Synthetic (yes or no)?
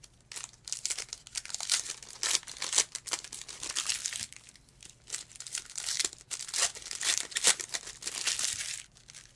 no